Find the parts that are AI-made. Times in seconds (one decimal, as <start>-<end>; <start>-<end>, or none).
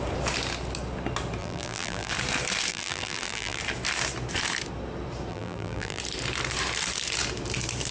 1.4-2.1; 2.7-3.6; 5.3-6.0